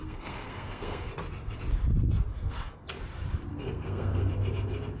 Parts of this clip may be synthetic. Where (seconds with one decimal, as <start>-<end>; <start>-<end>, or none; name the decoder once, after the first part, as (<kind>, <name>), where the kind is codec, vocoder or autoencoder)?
0.0-1.1 (codec, SNAC); 2.3-2.9; 3.5-4.3

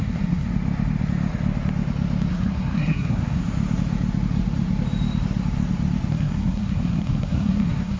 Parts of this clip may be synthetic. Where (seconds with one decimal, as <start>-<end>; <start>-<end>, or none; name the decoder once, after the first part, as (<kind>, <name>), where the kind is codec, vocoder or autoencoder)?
0.0-0.5 (codec, SNAC); 2.3-3.4; 6.1-8.0